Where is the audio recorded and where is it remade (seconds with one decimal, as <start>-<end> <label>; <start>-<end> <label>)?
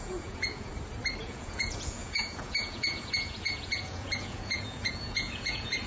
0.0-0.7 remade; 0.7-1.2 recorded; 1.2-5.9 remade